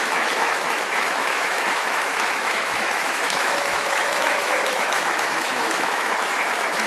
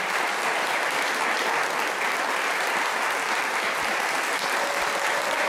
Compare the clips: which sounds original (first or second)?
second